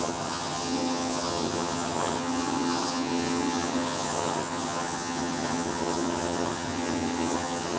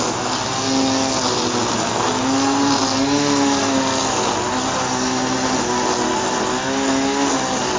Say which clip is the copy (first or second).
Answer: first